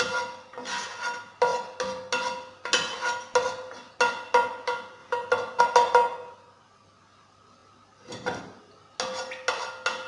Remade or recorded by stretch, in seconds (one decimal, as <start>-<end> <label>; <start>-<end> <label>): 0.0-7.6 recorded; 7.6-8.4 remade; 8.4-10.1 recorded